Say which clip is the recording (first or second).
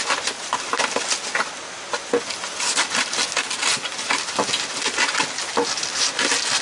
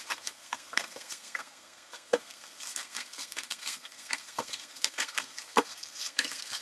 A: first